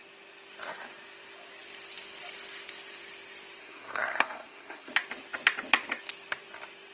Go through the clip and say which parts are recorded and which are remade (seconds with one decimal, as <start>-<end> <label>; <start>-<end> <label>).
0.0-3.6 recorded; 3.6-4.9 remade; 4.9-6.9 recorded